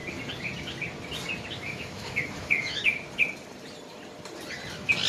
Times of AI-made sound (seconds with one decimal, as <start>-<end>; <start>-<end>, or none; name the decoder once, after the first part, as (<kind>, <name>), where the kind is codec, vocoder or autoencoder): 1.5-2.9 (autoencoder, DAC-VAE)